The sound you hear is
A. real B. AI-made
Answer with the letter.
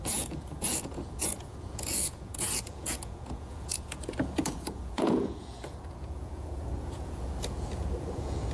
B